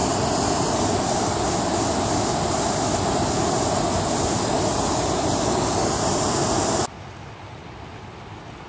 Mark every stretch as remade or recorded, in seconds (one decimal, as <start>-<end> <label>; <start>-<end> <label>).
0.0-8.7 recorded